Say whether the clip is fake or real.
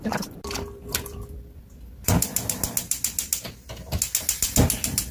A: real